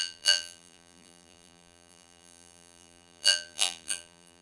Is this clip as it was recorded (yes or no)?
no